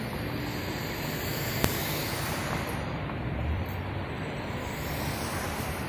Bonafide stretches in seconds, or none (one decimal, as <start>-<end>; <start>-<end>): 0.0-2.0; 5.5-5.9